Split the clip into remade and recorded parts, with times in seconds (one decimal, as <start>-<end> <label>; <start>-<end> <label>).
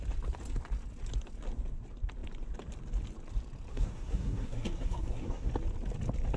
0.0-3.7 recorded; 3.7-5.5 remade; 5.5-6.4 recorded